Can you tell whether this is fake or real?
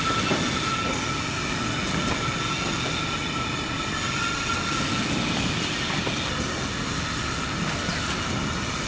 real